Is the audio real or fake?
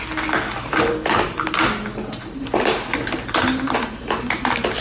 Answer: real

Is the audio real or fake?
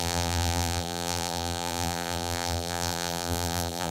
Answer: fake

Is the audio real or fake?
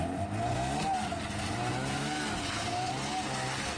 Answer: real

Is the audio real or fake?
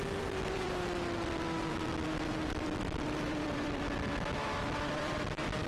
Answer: fake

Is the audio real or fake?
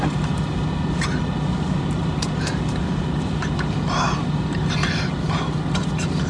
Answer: real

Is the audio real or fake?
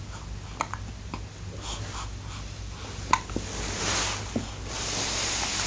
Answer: real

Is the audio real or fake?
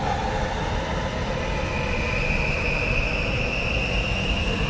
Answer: real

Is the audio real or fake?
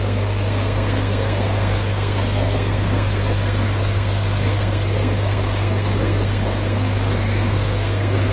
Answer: fake